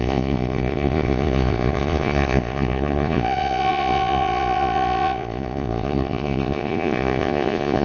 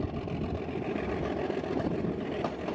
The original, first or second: second